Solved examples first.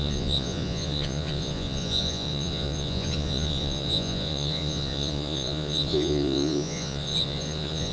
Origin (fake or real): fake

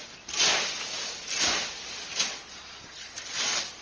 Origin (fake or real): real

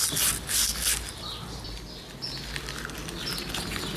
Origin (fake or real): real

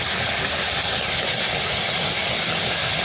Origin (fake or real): real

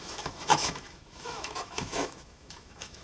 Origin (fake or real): fake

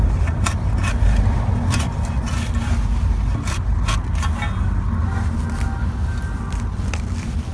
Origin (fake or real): real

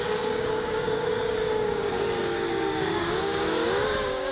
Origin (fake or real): fake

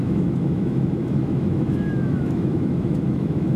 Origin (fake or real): fake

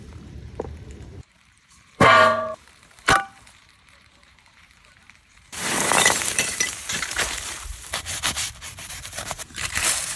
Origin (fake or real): fake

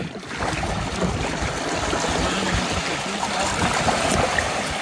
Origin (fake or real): real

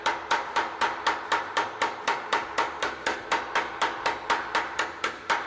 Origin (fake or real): fake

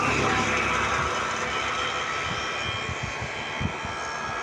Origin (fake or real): real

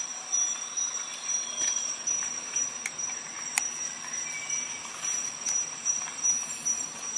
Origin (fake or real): fake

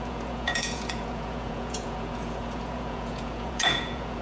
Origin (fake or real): fake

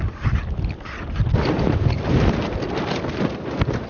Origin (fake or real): real